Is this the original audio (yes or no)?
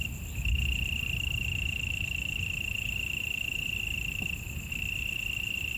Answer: yes